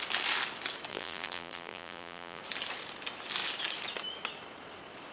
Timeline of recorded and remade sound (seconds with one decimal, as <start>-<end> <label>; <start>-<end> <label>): 0.0-0.9 recorded; 0.9-2.4 remade; 2.4-5.1 recorded